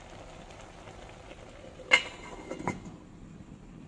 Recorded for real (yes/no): yes